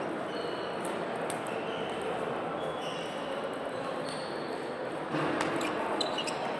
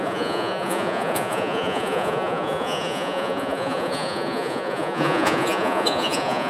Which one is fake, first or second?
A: second